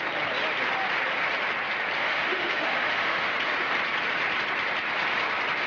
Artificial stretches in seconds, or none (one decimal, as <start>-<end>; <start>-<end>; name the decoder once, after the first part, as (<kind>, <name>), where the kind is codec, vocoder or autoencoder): 2.0-3.3 (autoencoder, DAC-VAE)